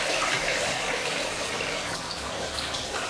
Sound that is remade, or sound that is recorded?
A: remade